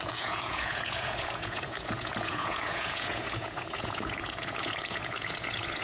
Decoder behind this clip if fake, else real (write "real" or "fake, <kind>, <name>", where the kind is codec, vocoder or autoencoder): fake, vocoder, Vocos